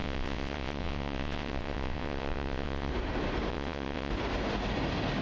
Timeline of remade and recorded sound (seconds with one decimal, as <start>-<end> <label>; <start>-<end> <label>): 0.0-2.9 remade; 2.9-3.5 recorded; 3.5-4.1 remade; 4.1-5.2 recorded